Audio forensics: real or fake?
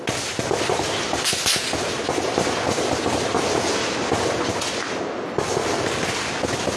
real